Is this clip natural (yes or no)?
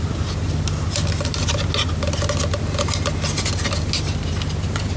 yes